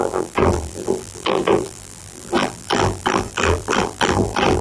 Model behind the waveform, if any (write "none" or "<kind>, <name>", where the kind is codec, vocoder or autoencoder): vocoder, BigVGAN v2